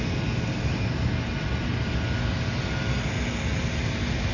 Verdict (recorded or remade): recorded